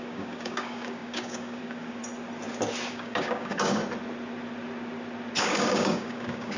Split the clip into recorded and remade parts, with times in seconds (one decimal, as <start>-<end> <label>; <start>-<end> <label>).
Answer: 0.0-2.0 remade; 2.0-2.9 recorded; 2.9-3.8 remade; 3.8-5.4 recorded; 5.4-6.6 remade